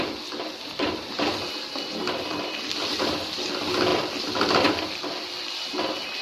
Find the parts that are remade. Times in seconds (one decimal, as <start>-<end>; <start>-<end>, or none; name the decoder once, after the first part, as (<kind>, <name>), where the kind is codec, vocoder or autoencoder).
none